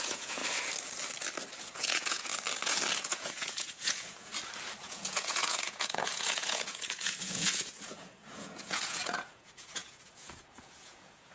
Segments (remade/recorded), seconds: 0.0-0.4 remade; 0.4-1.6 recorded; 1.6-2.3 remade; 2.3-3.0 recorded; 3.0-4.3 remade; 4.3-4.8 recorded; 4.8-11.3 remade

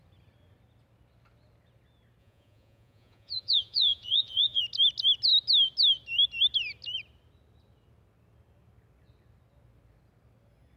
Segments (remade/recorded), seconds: 0.0-2.2 recorded; 2.2-4.6 remade; 4.6-10.8 recorded